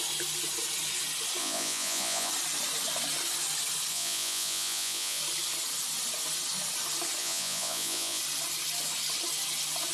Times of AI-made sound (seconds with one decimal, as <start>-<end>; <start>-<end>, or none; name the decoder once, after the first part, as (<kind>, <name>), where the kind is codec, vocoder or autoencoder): 1.4-2.3 (vocoder, Vocos); 3.9-5.2; 7.2-8.2